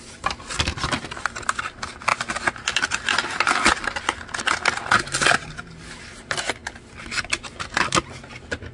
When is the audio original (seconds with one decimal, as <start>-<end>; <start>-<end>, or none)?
0.0-8.7